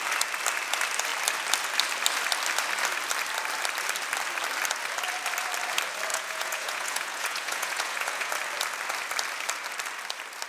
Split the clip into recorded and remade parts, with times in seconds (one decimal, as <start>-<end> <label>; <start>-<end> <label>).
0.0-6.1 recorded; 6.1-8.3 remade; 8.3-10.5 recorded